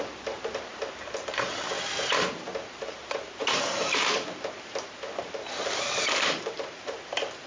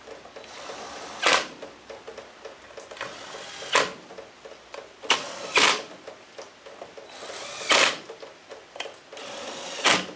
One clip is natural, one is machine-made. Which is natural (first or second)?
second